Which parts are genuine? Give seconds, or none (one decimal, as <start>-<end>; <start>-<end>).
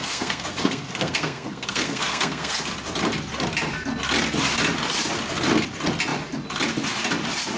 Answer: 2.6-7.6